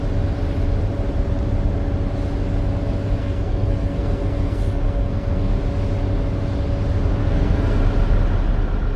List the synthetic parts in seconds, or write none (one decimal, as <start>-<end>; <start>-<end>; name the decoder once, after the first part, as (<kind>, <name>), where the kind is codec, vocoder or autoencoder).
3.2-5.5 (codec, SNAC); 7.2-7.8